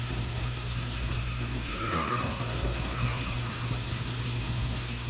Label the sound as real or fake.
fake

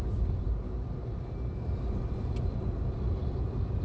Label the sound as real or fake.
real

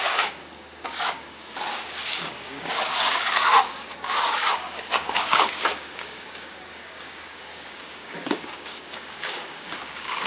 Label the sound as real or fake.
fake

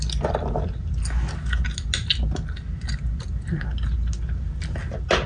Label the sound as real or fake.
real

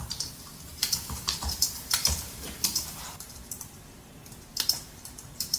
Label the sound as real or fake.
fake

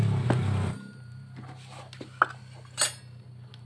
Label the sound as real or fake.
real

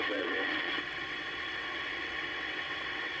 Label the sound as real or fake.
fake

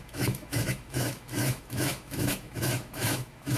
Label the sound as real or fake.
fake